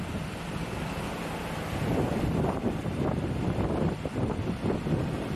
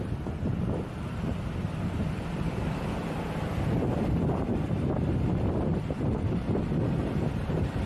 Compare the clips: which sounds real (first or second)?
first